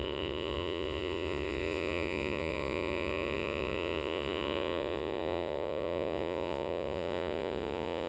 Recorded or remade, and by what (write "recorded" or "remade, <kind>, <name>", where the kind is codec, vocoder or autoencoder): remade, vocoder, Vocos